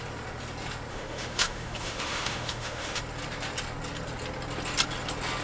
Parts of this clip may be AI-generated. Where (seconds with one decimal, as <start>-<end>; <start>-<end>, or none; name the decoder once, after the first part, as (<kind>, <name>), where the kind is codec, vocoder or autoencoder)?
0.9-3.0 (autoencoder, DAC-VAE)